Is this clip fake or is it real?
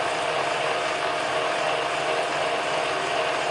fake